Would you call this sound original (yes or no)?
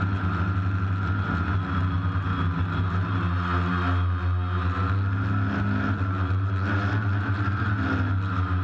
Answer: yes